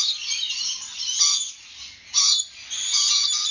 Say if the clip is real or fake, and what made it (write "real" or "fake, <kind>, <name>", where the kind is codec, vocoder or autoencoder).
real